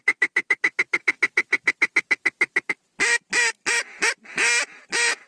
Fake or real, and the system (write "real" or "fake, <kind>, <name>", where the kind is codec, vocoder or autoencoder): real